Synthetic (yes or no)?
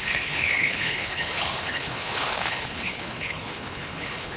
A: yes